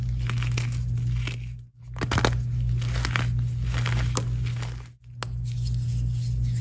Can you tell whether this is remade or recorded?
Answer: recorded